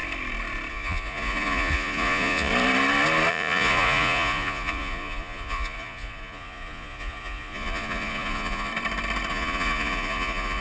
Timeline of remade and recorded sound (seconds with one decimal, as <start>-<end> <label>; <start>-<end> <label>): 0.0-0.7 recorded; 0.7-2.5 remade; 2.5-3.3 recorded; 3.3-8.7 remade; 8.7-9.3 recorded; 9.3-10.6 remade